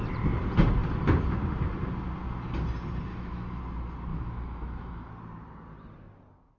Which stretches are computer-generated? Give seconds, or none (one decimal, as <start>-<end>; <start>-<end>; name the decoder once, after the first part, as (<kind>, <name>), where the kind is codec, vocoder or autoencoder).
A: 3.1-3.6 (autoencoder, DAC-VAE); 4.1-5.1